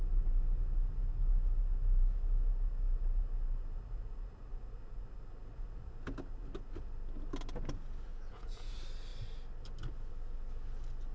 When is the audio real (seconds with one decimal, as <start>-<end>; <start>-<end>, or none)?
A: 0.0-8.1; 8.7-11.1